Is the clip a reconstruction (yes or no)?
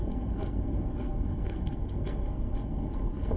yes